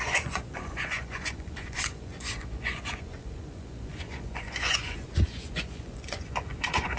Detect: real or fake fake